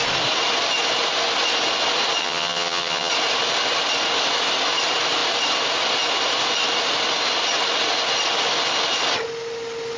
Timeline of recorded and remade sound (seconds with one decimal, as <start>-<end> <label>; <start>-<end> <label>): 0.0-2.2 recorded; 2.2-3.1 remade; 3.1-10.0 recorded

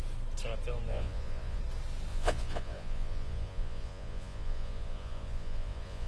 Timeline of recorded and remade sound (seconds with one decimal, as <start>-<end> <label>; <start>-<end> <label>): 0.0-0.9 recorded; 0.9-1.6 remade; 1.6-2.1 recorded; 2.1-6.1 remade

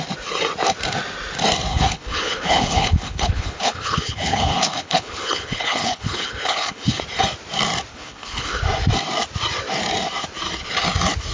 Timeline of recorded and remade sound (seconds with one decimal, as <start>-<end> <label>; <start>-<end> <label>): 0.0-1.7 recorded; 1.7-7.0 remade; 7.0-7.9 recorded; 7.9-8.6 remade; 8.6-11.3 recorded

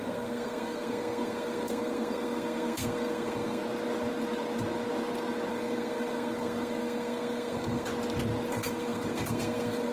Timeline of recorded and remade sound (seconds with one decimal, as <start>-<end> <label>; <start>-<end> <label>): 0.0-3.6 remade; 3.6-5.5 recorded; 5.5-7.9 remade; 7.9-8.5 recorded; 8.5-9.9 remade

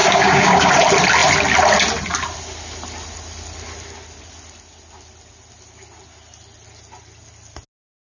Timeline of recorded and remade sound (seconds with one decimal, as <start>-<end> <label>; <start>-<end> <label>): 0.0-0.7 remade; 0.7-8.1 recorded

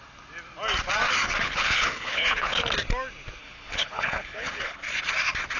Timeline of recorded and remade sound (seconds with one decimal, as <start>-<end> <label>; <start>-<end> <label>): 0.0-1.4 recorded; 1.4-2.7 remade; 2.7-3.4 recorded; 3.4-4.8 remade; 4.8-5.6 recorded

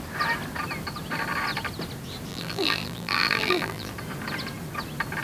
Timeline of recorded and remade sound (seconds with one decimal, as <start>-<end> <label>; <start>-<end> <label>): 0.0-2.3 recorded; 2.3-3.9 remade; 3.9-5.2 recorded